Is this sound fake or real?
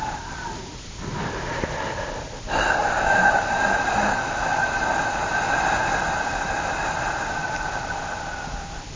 real